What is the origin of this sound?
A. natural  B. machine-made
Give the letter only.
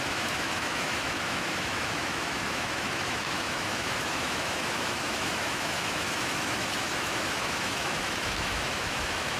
B